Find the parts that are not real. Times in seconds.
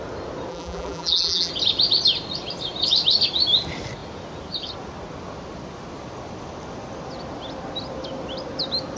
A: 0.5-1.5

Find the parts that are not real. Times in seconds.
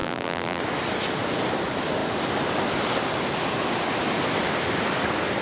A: 0.0-0.6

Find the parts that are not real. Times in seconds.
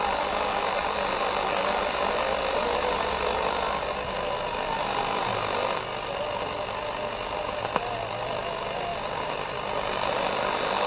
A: 8.9-10.1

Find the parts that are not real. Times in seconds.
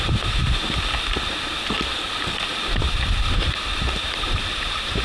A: 0.0-0.4; 3.3-5.0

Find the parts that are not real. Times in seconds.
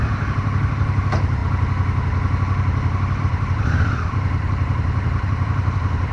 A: 0.0-1.4; 3.2-6.1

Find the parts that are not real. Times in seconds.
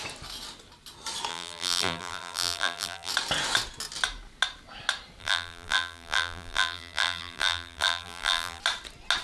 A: 1.3-3.1; 5.2-8.6